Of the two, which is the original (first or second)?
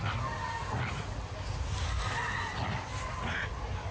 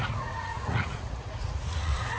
first